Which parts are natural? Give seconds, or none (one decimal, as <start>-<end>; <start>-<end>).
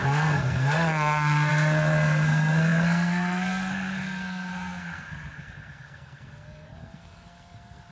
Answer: none